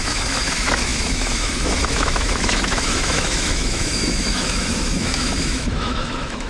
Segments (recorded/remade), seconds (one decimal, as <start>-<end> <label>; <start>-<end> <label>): 0.0-6.5 remade